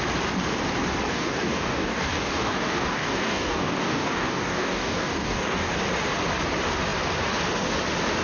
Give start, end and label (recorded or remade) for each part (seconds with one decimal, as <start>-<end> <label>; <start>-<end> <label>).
0.0-1.1 recorded; 1.1-5.7 remade; 5.7-8.2 recorded